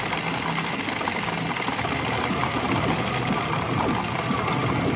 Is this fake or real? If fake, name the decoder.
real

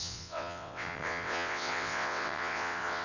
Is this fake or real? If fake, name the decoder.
fake, vocoder, WaveNeXt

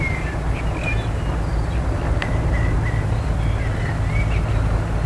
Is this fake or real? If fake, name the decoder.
real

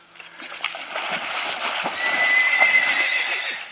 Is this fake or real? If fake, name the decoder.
real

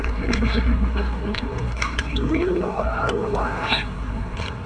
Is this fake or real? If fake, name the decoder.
fake, codec, SNAC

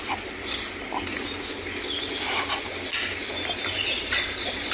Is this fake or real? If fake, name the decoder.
real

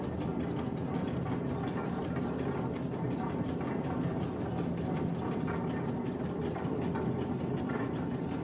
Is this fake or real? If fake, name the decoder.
real